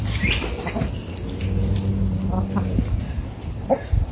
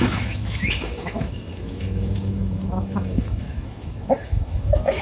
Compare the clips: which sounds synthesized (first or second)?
second